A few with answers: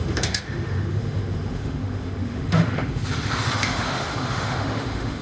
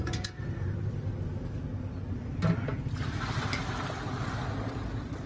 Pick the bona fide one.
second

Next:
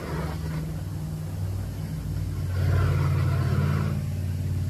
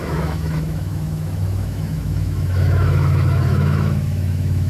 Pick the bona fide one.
first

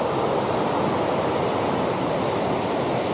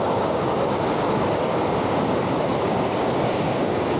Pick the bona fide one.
first